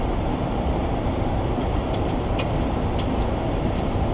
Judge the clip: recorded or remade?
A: remade